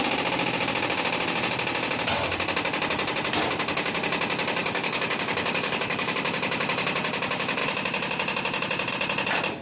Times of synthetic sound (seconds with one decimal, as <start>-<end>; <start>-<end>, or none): 4.6-6.1